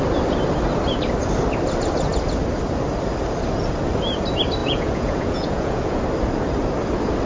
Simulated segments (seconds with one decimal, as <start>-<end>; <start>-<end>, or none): 4.6-6.0